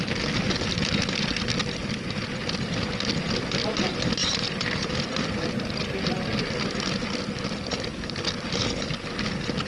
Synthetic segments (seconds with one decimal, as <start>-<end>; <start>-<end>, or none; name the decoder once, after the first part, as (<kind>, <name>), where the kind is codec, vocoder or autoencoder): 4.2-5.4 (vocoder, BigVGAN v2)